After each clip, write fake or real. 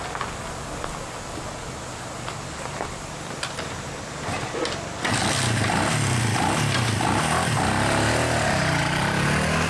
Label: real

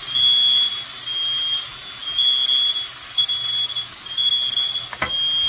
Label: real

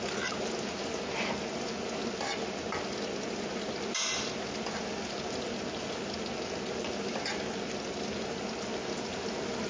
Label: real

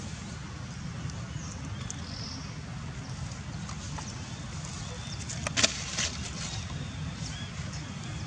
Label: real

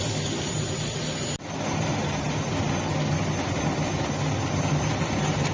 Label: real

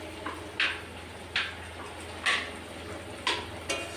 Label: real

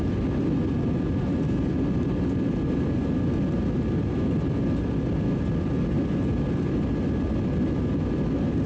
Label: real